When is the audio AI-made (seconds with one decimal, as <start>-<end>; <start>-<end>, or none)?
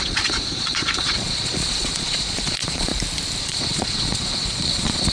0.0-2.9; 3.4-5.1